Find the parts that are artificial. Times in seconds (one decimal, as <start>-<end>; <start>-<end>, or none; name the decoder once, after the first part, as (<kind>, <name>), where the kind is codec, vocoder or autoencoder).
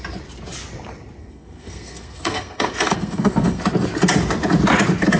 1.2-3.6 (codec, SNAC)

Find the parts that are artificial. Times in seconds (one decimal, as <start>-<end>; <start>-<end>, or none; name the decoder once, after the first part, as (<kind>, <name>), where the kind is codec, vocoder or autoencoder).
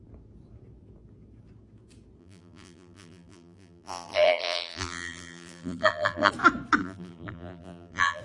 2.2-6.3 (vocoder, BigVGAN v2); 6.8-8.2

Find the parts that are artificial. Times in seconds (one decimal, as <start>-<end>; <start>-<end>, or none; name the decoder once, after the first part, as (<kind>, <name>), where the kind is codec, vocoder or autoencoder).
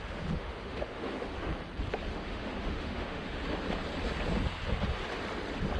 0.0-1.5 (autoencoder, DAC-VAE); 2.1-3.4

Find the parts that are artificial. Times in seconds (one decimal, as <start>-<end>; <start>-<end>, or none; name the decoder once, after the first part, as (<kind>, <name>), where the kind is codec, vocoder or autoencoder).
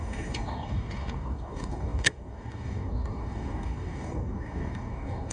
0.0-5.3 (codec, DAC)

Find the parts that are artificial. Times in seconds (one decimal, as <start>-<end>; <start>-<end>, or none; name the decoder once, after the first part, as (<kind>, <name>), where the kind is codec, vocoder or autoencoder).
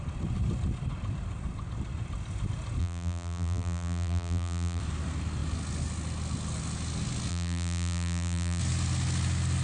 2.8-4.8 (vocoder, BigVGAN v2); 7.3-8.6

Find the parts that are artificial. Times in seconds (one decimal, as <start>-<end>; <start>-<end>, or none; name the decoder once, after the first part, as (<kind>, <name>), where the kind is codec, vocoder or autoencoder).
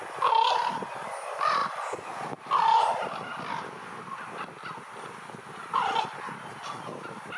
none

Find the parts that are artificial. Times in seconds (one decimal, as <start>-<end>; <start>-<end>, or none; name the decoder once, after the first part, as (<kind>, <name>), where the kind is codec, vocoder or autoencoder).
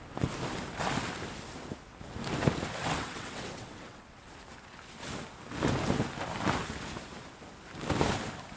2.8-4.3 (vocoder, WaveNeXt)